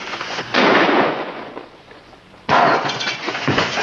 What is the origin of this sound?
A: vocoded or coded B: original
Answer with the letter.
A